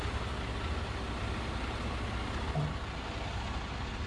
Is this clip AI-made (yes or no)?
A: no